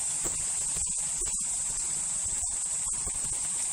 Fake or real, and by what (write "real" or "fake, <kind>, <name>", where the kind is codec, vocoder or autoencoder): real